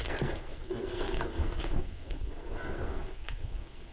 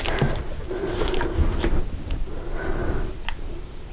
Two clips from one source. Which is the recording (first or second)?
second